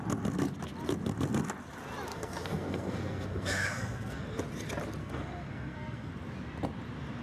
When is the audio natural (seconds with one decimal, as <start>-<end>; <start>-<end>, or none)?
0.0-2.1; 4.2-5.0; 6.1-7.2